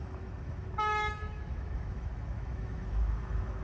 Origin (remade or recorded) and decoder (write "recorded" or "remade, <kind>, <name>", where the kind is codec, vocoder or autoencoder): remade, autoencoder, DAC-VAE